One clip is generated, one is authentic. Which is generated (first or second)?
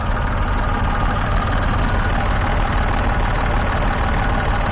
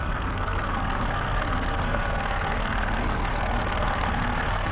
second